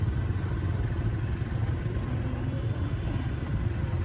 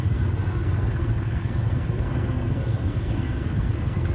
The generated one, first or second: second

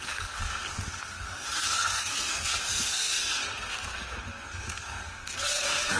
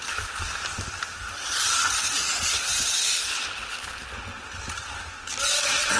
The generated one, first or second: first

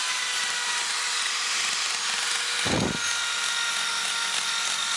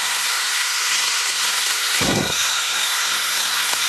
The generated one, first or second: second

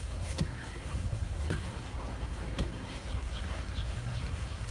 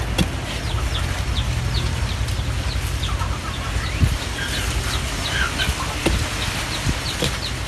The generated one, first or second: first